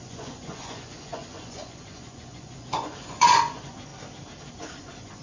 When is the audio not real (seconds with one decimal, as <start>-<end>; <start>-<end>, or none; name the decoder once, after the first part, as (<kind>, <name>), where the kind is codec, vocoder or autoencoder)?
0.0-3.9 (vocoder, Vocos); 4.5-5.2